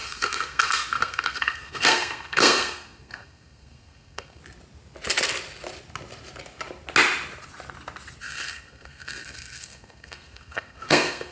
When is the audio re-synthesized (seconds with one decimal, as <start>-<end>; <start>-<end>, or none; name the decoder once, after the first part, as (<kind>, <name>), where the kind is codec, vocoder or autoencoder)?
0.0-4.4 (codec, SNAC); 8.2-11.3